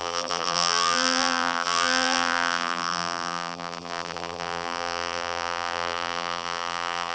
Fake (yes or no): yes